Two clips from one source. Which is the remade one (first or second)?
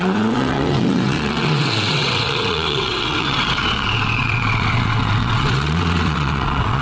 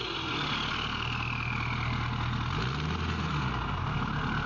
first